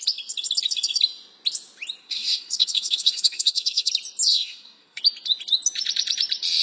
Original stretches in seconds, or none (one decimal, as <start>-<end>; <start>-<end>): 0.0-2.0; 3.9-4.3; 5.0-6.6